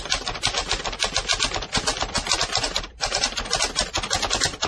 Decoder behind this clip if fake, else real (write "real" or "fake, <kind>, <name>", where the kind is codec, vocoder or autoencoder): real